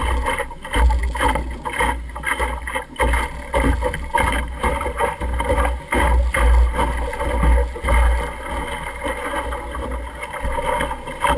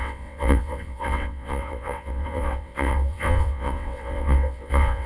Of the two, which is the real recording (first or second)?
first